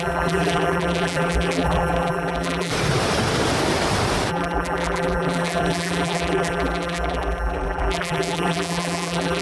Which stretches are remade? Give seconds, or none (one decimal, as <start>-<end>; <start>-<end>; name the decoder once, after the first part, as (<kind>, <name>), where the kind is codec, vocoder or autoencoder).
0.0-2.7 (vocoder, BigVGAN v2); 4.3-9.4